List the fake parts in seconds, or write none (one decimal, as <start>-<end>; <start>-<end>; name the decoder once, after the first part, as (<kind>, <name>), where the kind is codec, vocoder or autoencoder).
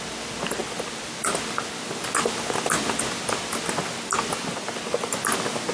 none